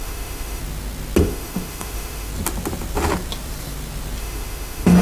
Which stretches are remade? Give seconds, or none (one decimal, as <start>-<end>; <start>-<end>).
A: 0.0-0.6; 1.2-2.3; 4.2-5.0